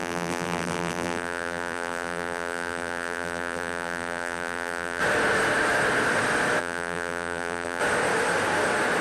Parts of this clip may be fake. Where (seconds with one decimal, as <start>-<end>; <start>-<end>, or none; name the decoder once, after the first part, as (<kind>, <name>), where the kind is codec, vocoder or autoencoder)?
0.0-5.0 (vocoder, BigVGAN v2); 6.6-7.8